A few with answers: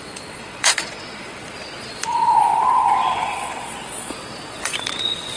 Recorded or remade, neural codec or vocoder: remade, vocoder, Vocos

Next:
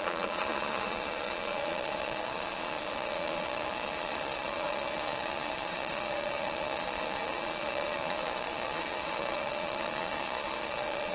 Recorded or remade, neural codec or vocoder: remade, vocoder, Vocos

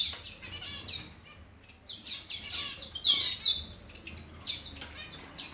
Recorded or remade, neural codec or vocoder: recorded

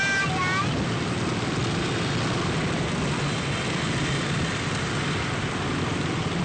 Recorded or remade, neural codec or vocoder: recorded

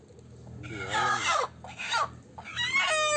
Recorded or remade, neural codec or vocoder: recorded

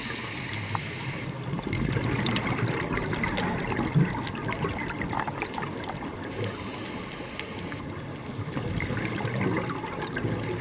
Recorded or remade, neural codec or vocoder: recorded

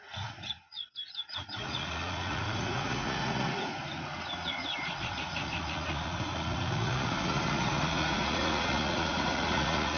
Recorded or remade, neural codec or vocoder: remade, vocoder, Vocos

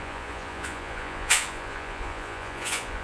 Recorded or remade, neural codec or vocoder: remade, vocoder, Vocos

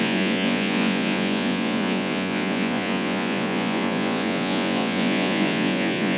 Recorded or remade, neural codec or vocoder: remade, vocoder, Vocos